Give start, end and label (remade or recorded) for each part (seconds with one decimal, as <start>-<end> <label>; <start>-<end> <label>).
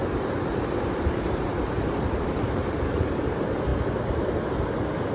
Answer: 0.0-3.1 remade; 3.1-5.1 recorded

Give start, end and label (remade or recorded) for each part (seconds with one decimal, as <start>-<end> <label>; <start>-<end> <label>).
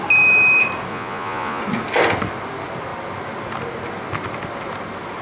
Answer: 0.0-0.9 recorded; 0.9-1.6 remade; 1.6-5.2 recorded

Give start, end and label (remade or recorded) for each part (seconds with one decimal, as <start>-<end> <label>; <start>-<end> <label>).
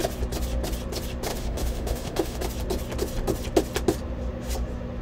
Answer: 0.0-1.3 recorded; 1.3-2.4 remade; 2.4-5.0 recorded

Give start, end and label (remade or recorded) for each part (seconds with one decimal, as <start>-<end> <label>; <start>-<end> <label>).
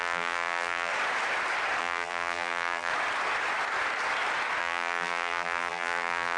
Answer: 0.0-0.9 remade; 0.9-1.8 recorded; 1.8-2.9 remade; 2.9-4.6 recorded; 4.6-6.4 remade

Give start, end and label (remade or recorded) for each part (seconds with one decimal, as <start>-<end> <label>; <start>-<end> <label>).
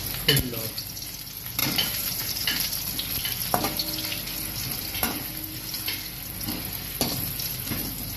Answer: 0.0-1.6 recorded; 1.6-2.7 remade; 2.7-8.2 recorded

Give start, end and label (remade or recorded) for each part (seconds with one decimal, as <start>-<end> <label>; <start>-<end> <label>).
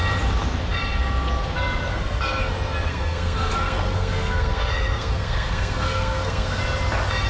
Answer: 0.0-1.9 recorded; 1.9-2.5 remade; 2.5-2.9 recorded; 2.9-6.6 remade; 6.6-7.3 recorded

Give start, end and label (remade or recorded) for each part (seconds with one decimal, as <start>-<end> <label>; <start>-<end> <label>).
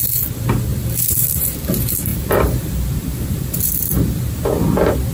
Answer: 0.0-0.7 recorded; 0.7-1.5 remade; 1.5-2.1 recorded; 2.1-2.7 remade; 2.7-3.1 recorded; 3.1-3.6 remade; 3.6-5.1 recorded